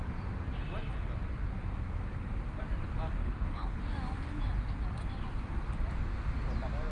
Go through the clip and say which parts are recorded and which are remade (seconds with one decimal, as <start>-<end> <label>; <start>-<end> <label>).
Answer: 0.0-3.2 recorded; 3.2-3.8 remade; 3.8-6.9 recorded